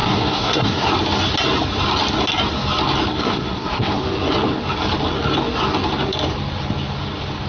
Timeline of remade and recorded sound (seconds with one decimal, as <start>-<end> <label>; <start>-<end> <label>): 0.0-0.9 remade; 0.9-3.1 recorded; 3.1-4.0 remade; 4.0-7.5 recorded